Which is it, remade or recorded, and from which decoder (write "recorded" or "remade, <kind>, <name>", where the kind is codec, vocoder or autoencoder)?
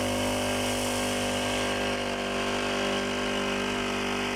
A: recorded